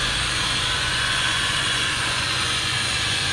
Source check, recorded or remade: remade